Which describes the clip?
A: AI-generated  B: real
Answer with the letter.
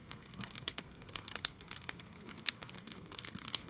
A